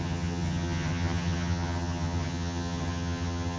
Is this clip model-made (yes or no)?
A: yes